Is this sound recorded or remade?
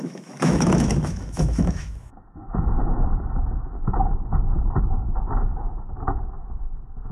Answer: remade